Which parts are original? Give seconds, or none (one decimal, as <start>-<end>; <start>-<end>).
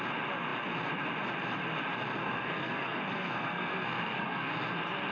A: 0.0-2.2; 4.5-5.1